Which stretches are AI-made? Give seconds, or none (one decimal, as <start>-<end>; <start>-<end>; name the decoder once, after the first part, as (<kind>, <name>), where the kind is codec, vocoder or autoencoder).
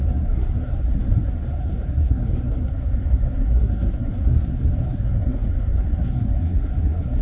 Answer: 0.0-7.2 (codec, SNAC)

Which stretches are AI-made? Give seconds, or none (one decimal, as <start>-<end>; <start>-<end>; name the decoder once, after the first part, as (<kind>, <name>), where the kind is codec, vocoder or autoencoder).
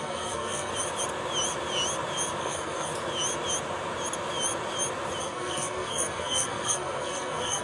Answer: 0.0-0.7 (codec, SNAC); 2.4-2.9; 5.2-7.6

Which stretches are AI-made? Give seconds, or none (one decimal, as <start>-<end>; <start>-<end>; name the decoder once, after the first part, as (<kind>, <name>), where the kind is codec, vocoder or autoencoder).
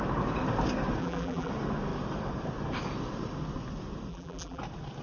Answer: 1.0-1.5 (vocoder, BigVGAN v2); 4.1-4.6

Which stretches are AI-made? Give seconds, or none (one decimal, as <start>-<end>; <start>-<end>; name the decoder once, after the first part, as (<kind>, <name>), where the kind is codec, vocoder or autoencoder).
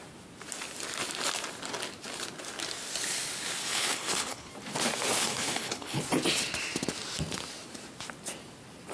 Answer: 3.6-4.5 (codec, HILCodec); 5.2-6.0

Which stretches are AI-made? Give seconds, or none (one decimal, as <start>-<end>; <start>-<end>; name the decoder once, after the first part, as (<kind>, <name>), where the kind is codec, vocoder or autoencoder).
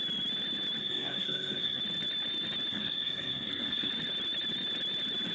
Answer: 0.8-1.8 (codec, SNAC); 2.7-3.9